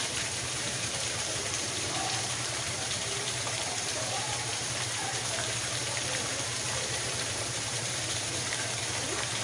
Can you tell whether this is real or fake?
fake